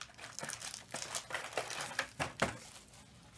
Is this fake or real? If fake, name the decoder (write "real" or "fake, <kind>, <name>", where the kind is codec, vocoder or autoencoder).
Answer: real